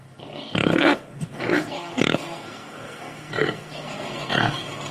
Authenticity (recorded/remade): remade